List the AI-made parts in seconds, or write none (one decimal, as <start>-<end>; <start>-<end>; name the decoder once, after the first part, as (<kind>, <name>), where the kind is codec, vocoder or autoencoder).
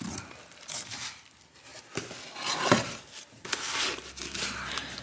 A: none